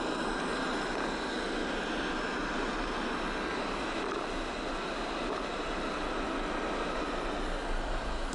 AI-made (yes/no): no